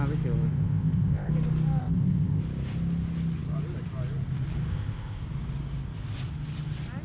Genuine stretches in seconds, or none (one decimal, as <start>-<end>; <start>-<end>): 0.0-0.5; 1.3-1.8; 2.4-4.7; 5.2-7.0